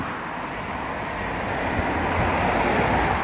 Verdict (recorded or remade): recorded